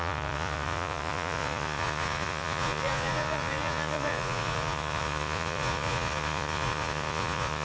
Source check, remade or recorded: remade